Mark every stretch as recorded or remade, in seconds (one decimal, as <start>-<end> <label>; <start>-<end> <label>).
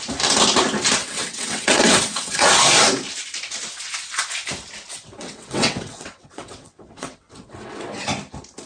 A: 0.0-1.0 recorded; 1.0-2.4 remade; 2.4-4.9 recorded; 4.9-8.0 remade; 8.0-8.7 recorded